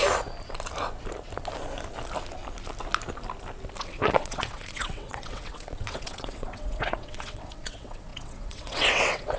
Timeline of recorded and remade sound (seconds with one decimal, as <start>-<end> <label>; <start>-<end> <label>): 0.0-3.8 recorded; 3.8-9.4 remade